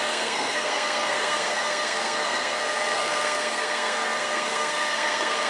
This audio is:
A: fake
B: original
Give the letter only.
A